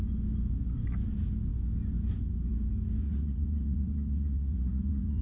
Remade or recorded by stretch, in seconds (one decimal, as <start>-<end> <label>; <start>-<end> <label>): 0.0-3.0 recorded; 3.0-5.2 remade